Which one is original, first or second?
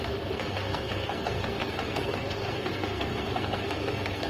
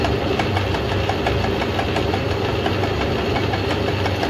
second